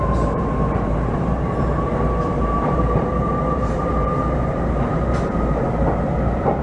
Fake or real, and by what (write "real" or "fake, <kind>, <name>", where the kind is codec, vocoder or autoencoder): fake, vocoder, BigVGAN v2